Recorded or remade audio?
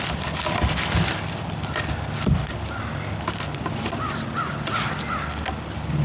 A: recorded